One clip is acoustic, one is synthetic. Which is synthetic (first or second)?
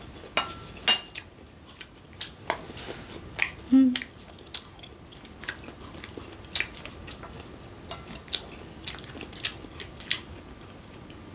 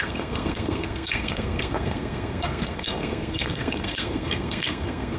second